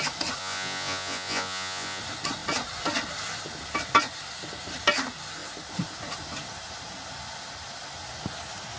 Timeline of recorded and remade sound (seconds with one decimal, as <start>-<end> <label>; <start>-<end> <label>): 0.0-0.4 recorded; 0.4-2.0 remade; 2.0-8.8 recorded

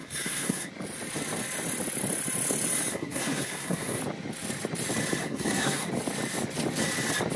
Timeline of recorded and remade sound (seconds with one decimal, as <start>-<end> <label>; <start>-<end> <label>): 0.0-0.7 remade; 0.7-2.9 recorded; 2.9-4.0 remade; 4.0-5.2 recorded; 5.2-5.9 remade; 5.9-7.4 recorded

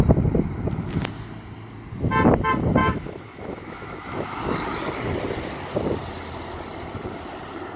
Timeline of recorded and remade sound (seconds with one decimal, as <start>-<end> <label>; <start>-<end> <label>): 0.0-2.8 recorded; 2.8-4.4 remade; 4.4-7.8 recorded

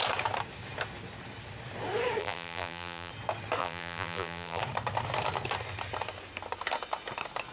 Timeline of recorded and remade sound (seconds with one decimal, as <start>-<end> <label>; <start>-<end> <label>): 0.0-2.2 recorded; 2.2-3.1 remade; 3.1-3.6 recorded; 3.6-4.6 remade; 4.6-7.5 recorded